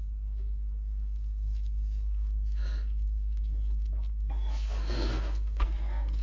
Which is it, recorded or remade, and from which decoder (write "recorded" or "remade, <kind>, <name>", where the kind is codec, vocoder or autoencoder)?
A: remade, codec, SNAC